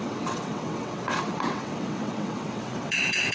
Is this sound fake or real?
fake